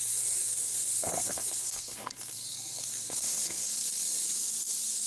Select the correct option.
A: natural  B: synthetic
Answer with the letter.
B